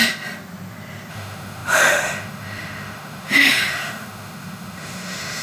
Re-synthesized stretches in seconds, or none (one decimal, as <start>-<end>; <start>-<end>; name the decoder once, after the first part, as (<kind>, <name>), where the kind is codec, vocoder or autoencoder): 1.1-5.4 (autoencoder, DAC-VAE)